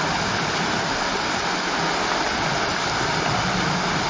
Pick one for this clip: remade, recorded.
recorded